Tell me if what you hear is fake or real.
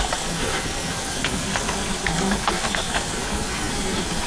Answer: fake